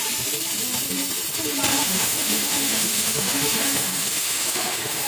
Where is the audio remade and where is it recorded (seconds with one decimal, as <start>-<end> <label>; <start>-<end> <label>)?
0.0-1.7 recorded; 1.7-5.1 remade